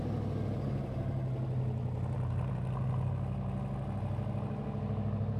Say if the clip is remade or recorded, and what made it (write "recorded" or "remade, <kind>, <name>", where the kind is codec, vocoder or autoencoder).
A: recorded